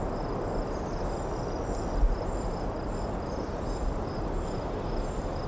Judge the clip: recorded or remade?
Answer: recorded